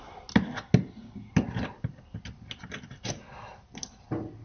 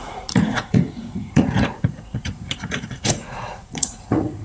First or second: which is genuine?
first